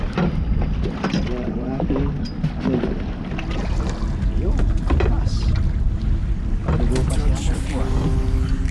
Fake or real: real